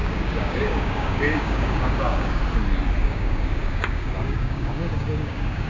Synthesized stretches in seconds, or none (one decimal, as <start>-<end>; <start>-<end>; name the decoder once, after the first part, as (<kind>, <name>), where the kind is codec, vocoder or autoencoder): 0.0-2.4 (codec, DAC); 3.0-5.7